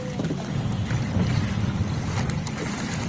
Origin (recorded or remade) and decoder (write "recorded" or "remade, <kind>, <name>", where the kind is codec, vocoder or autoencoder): recorded